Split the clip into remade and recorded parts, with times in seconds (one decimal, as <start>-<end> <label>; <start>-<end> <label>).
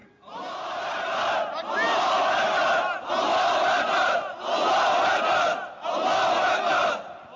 0.0-7.4 recorded